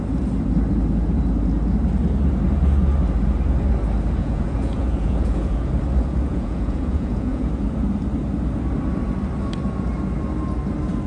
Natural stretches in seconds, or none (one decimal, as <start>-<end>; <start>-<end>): 0.0-4.2; 5.7-6.3; 7.5-11.1